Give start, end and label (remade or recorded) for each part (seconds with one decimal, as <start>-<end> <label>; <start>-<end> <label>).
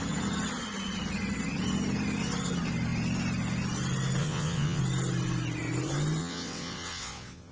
0.0-4.2 recorded; 4.2-4.8 remade; 4.8-6.2 recorded; 6.2-7.5 remade